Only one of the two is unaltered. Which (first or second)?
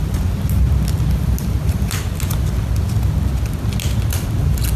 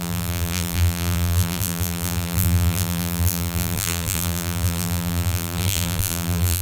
first